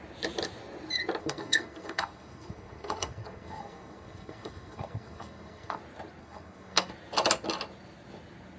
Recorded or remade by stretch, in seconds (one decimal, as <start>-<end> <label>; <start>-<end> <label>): 0.0-1.2 recorded; 1.2-5.8 remade; 5.8-6.2 recorded; 6.2-6.9 remade; 6.9-8.6 recorded